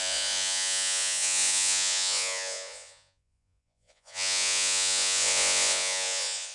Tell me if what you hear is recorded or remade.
remade